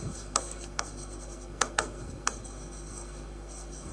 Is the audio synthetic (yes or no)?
yes